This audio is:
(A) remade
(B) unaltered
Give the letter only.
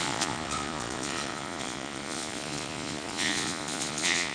A